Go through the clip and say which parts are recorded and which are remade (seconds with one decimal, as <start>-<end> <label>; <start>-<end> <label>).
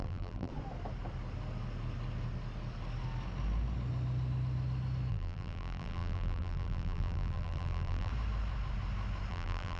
0.0-0.5 remade; 0.5-5.1 recorded; 5.1-8.1 remade; 8.1-9.3 recorded; 9.3-9.8 remade